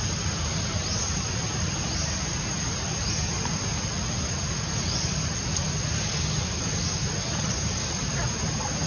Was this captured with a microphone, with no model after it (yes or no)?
yes